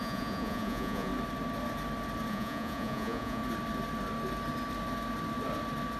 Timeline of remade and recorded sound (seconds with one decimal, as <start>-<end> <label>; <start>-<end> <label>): 0.0-1.1 remade; 1.1-2.3 recorded; 2.3-3.4 remade; 3.4-6.0 recorded